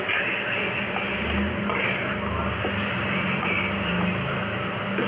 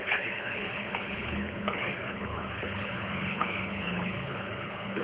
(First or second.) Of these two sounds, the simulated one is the second